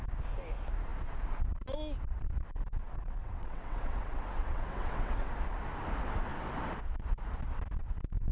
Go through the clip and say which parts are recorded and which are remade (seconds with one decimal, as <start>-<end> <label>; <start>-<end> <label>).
0.0-2.8 recorded; 2.8-5.3 remade; 5.3-8.3 recorded